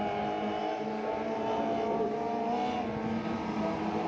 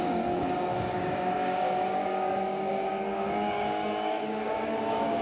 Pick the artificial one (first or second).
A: second